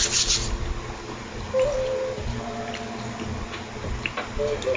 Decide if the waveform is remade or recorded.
recorded